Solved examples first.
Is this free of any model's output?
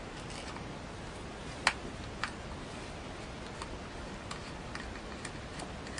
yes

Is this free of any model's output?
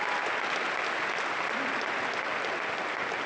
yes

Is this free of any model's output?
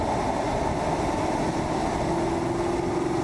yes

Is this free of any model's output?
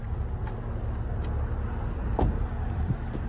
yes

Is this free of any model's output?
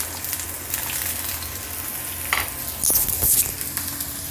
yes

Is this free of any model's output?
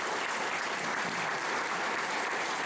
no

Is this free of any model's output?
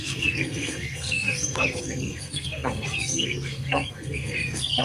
no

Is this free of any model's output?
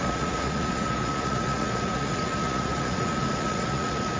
no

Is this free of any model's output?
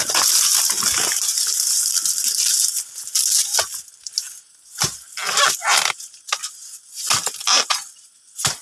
yes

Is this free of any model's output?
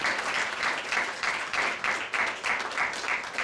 no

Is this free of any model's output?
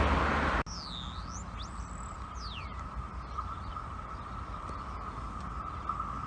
yes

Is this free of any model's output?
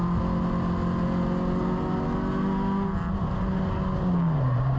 yes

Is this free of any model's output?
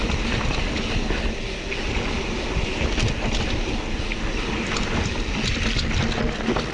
yes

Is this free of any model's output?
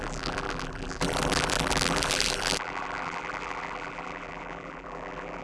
no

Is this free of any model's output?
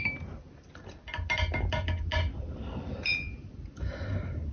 yes